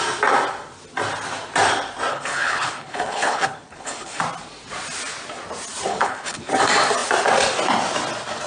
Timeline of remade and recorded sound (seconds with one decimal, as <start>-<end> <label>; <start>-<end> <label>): 0.0-2.1 recorded; 2.1-4.2 remade; 4.2-5.9 recorded; 5.9-6.4 remade; 6.4-8.5 recorded